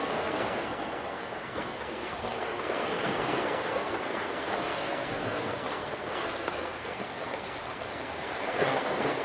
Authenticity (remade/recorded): remade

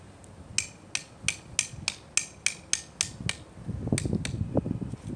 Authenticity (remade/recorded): recorded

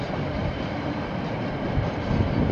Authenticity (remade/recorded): recorded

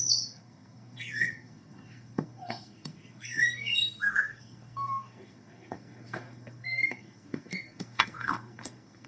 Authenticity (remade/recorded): remade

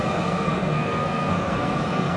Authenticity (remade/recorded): remade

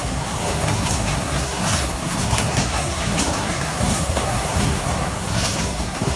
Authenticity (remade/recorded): remade